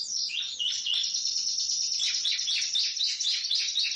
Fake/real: real